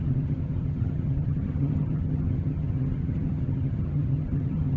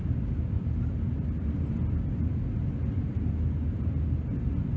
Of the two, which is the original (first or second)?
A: second